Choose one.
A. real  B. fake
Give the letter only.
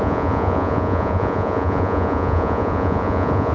B